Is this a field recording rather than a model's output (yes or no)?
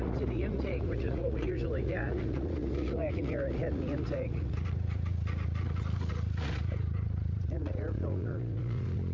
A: no